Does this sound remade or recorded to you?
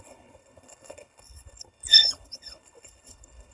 remade